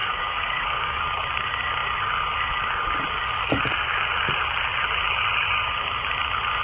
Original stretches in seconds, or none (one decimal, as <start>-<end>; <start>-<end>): 1.0-6.6